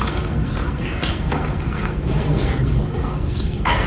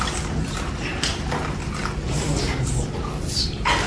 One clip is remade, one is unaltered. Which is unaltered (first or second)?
second